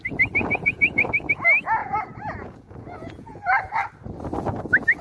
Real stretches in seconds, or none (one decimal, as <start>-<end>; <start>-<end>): 0.0-0.4; 1.0-1.8; 3.6-5.0